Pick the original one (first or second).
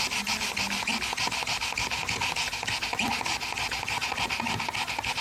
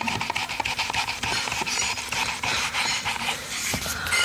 first